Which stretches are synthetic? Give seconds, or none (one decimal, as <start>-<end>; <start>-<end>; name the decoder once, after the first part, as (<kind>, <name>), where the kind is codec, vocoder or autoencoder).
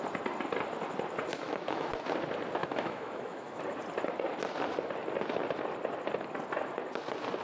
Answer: 1.3-1.9 (autoencoder, DAC-VAE); 2.6-3.6